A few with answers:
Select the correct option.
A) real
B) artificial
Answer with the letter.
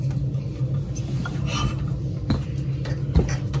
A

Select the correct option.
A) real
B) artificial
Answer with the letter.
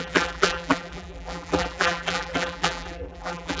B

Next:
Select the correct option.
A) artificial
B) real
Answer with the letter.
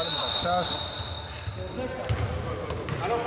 B